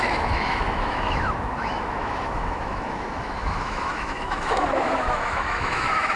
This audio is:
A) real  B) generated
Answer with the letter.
B